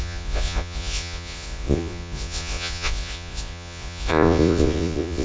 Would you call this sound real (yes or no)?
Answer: no